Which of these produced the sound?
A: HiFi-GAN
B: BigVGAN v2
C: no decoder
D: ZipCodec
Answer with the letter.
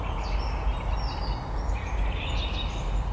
C